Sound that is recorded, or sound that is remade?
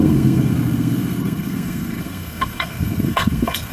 remade